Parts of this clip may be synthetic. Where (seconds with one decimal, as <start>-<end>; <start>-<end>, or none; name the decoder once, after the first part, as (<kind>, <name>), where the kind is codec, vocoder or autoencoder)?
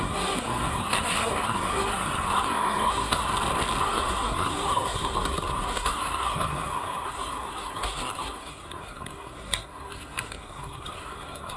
0.0-3.3 (codec, SNAC); 3.8-11.6